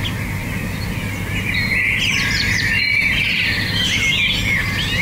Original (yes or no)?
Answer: yes